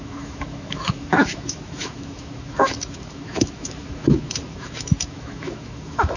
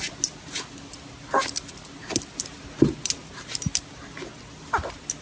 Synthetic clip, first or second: first